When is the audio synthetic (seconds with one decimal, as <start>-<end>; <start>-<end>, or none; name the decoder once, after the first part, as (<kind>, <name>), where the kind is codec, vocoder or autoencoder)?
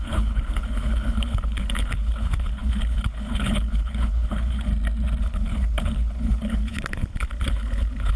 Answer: 0.0-4.7 (codec, HILCodec); 5.2-8.2